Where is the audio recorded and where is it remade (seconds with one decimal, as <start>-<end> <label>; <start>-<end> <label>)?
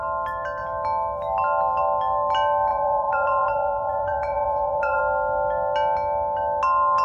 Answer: 0.0-2.7 recorded; 2.7-5.0 remade; 5.0-7.0 recorded